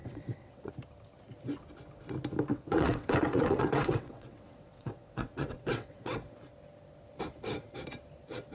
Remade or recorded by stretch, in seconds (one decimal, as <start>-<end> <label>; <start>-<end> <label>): 0.0-0.7 remade; 0.7-2.5 recorded; 2.5-6.3 remade; 6.3-8.5 recorded

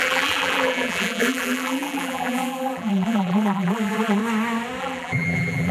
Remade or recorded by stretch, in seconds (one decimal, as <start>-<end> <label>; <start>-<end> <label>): 0.0-4.2 remade; 4.2-4.8 recorded; 4.8-5.7 remade

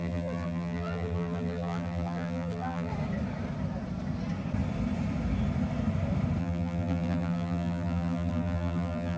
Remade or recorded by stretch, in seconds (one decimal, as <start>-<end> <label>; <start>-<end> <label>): 0.0-2.9 remade; 2.9-6.4 recorded; 6.4-9.2 remade